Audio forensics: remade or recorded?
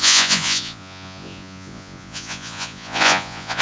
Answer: remade